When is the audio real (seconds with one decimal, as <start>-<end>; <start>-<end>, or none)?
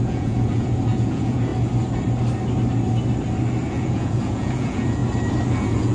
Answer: 1.5-3.7; 5.0-5.5